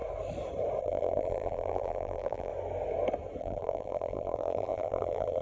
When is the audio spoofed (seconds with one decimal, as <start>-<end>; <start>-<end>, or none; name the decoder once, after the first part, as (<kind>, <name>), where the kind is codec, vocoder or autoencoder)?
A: 0.8-2.5 (vocoder, BigVGAN v2); 3.4-5.4